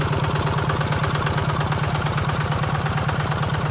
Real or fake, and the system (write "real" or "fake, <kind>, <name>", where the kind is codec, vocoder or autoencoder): real